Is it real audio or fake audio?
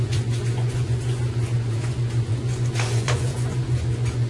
fake